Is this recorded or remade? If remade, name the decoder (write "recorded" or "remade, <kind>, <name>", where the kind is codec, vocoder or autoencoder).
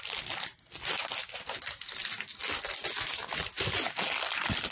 recorded